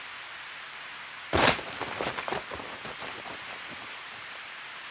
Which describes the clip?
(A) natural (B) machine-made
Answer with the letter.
A